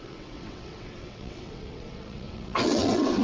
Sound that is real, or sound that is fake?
fake